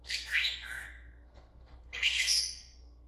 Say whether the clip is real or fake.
fake